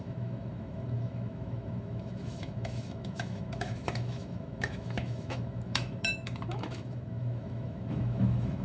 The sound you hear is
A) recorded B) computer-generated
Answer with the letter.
B